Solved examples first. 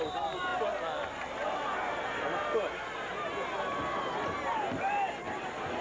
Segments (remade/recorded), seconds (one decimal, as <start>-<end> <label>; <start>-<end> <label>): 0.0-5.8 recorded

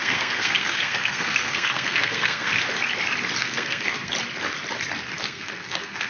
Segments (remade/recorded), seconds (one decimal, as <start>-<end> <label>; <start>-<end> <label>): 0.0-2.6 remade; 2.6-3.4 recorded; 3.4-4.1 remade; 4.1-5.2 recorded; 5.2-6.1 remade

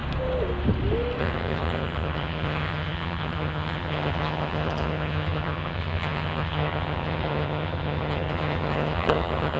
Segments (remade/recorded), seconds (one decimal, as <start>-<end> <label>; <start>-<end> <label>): 0.0-1.2 recorded; 1.2-9.6 remade